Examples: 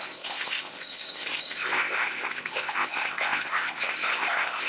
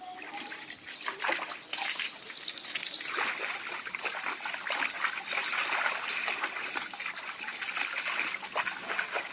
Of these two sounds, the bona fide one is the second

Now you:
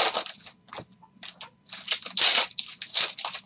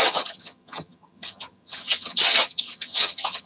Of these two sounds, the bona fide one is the first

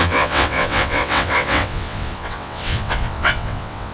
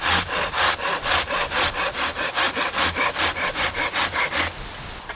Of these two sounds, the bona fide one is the second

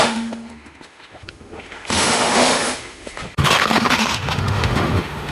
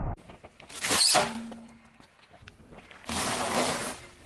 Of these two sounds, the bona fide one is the second